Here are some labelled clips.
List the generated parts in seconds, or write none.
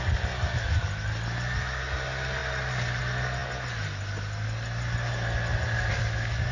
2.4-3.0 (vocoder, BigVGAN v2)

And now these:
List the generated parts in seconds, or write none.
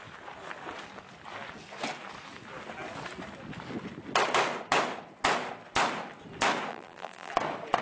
6.7-7.3 (vocoder, BigVGAN v2)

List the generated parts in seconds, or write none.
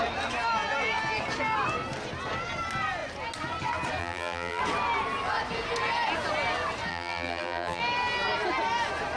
4.0-4.6 (vocoder, BigVGAN v2); 6.9-7.8